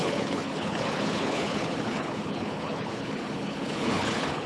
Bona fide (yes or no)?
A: no